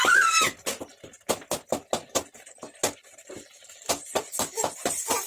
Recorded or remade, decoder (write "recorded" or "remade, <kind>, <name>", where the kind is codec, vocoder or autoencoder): recorded